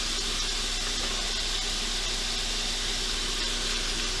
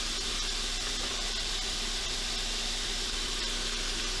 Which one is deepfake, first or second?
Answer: second